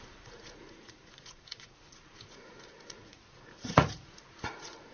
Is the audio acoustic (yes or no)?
no